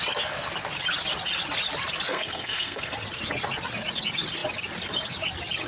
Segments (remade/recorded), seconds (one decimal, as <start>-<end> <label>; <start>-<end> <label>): 0.0-2.1 recorded; 2.1-2.9 remade; 2.9-5.7 recorded